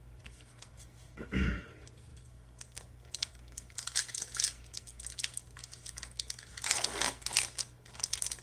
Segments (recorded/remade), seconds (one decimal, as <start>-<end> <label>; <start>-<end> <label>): 0.0-8.4 remade